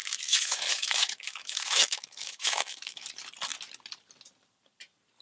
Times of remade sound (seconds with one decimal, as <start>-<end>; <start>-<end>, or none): 0.0-3.1